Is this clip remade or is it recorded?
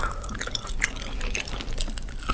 recorded